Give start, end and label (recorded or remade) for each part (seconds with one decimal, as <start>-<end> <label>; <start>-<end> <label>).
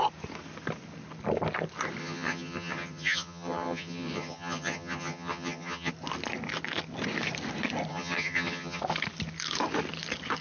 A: 0.0-2.0 recorded; 2.0-5.9 remade; 5.9-7.9 recorded; 7.9-8.8 remade; 8.8-10.4 recorded